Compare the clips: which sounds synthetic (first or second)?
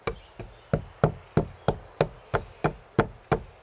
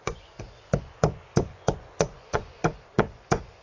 second